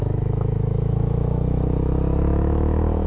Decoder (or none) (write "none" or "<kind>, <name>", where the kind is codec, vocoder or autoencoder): autoencoder, DAC-VAE